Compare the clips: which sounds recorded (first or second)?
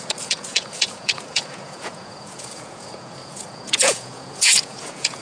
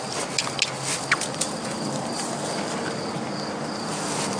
second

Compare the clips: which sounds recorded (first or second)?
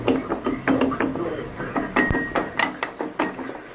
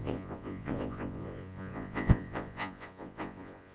first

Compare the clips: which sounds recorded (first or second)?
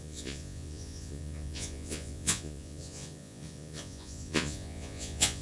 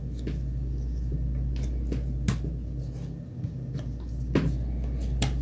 second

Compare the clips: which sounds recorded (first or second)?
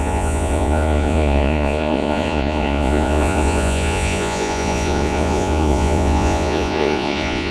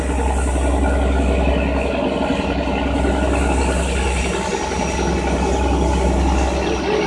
second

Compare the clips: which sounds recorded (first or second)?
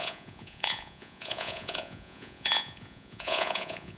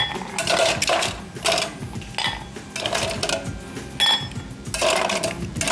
second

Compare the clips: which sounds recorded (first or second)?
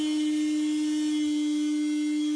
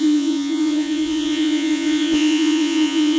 first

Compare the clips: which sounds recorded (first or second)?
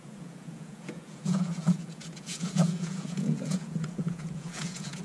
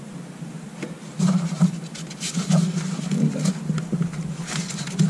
second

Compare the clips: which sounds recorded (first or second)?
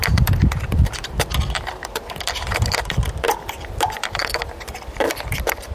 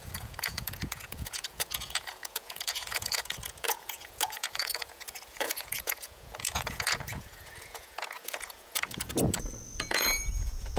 first